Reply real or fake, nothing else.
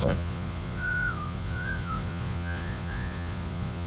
fake